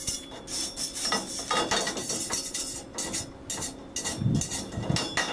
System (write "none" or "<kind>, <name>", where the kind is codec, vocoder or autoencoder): none